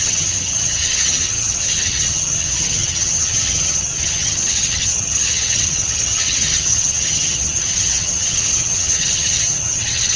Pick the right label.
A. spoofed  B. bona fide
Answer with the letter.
A